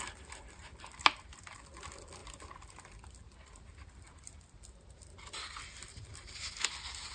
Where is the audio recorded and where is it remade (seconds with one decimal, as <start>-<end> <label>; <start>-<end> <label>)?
0.0-7.1 recorded